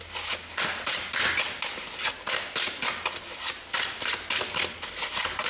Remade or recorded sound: recorded